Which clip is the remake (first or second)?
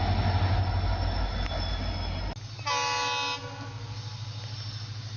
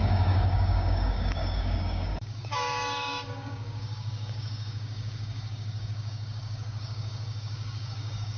second